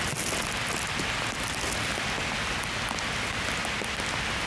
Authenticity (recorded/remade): recorded